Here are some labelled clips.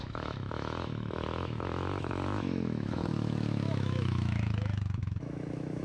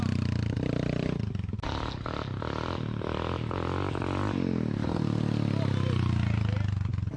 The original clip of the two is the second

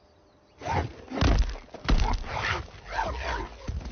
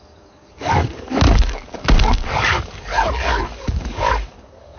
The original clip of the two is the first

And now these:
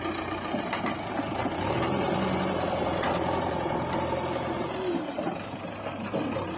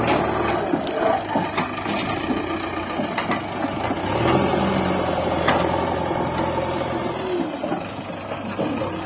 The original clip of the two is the second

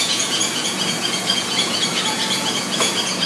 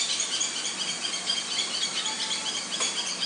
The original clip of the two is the second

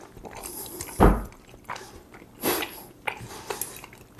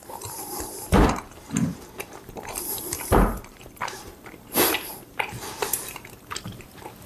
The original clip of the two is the first